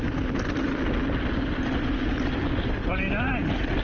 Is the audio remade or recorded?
recorded